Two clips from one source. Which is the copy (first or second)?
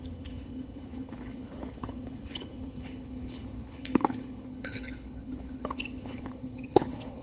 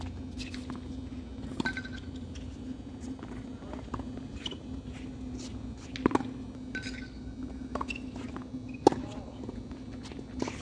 first